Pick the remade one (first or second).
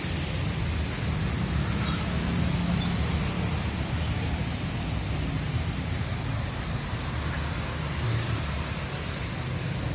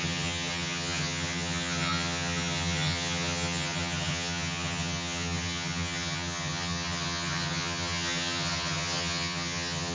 second